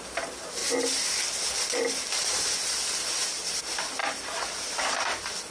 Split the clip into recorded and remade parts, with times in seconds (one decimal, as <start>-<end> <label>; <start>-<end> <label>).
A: 0.0-0.6 recorded; 0.6-3.6 remade; 3.6-4.0 recorded; 4.0-5.0 remade; 5.0-5.5 recorded